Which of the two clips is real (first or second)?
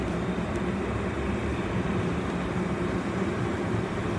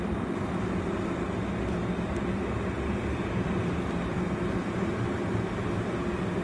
second